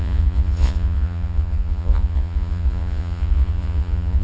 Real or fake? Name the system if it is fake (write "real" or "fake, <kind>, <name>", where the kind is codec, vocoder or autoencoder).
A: fake, vocoder, Vocos